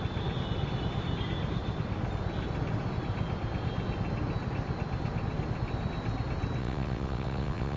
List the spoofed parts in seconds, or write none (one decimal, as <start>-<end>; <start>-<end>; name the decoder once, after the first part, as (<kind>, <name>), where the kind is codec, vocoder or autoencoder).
6.6-7.8 (vocoder, WaveNeXt)